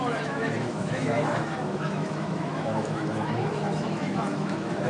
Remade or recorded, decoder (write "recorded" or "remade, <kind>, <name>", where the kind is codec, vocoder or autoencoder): remade, autoencoder, DAC-VAE